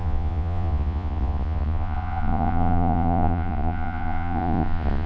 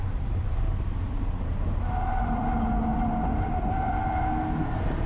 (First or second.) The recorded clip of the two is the second